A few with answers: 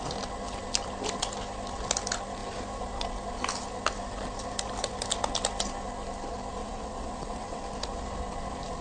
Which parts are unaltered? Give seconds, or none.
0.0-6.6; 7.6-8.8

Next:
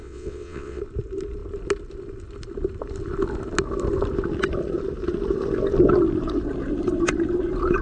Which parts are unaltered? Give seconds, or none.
0.8-7.8